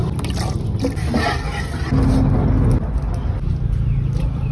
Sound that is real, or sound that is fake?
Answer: real